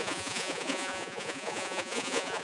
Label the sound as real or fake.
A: fake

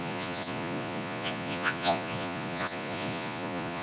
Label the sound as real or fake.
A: fake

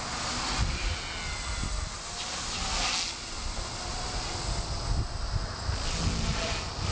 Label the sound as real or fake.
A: real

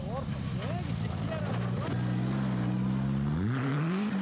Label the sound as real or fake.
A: real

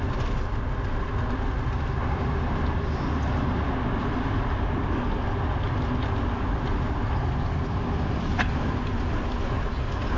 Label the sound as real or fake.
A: real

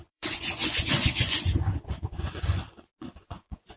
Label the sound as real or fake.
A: fake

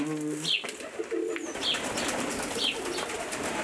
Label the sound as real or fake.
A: real